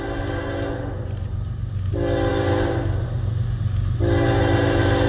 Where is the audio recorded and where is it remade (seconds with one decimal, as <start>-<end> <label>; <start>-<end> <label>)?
0.0-5.1 recorded